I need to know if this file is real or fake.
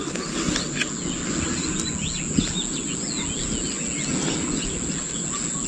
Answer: real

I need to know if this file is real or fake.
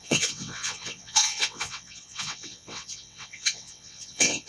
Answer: fake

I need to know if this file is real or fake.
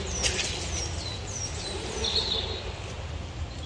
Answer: real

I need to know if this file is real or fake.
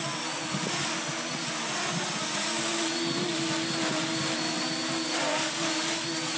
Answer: real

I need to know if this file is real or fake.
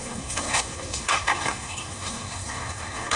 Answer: fake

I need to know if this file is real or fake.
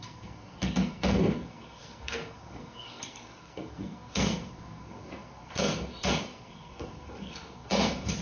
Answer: fake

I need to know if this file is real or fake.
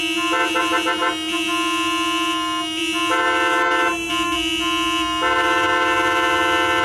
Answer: real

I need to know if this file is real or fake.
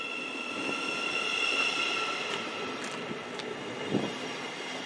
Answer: real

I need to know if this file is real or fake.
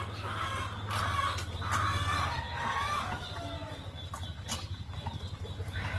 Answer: real